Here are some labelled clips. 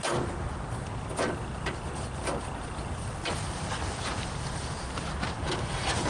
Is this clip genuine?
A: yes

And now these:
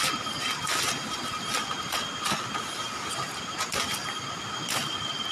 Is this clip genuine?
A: yes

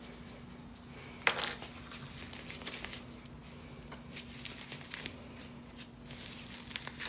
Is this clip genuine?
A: yes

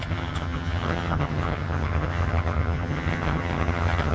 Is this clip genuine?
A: no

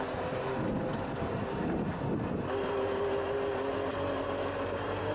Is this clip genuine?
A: yes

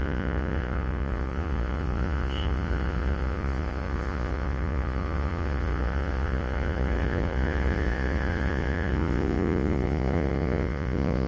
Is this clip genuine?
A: no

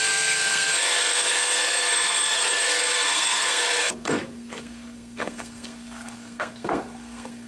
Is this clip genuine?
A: no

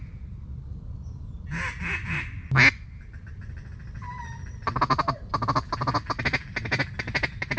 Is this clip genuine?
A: yes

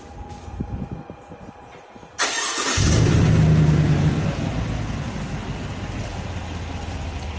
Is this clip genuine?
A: yes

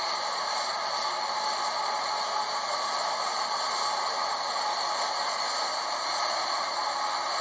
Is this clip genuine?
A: yes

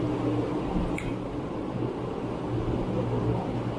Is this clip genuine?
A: yes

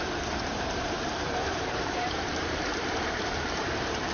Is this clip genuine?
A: no